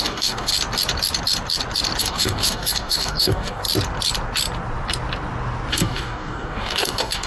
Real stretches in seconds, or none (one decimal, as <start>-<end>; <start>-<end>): 0.5-2.0; 3.6-5.7